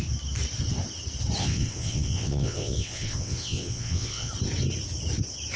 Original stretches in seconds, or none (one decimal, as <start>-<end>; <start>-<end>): 0.0-1.4; 4.3-5.6